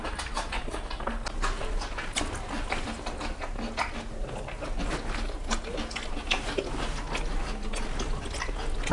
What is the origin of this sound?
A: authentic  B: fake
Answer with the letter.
A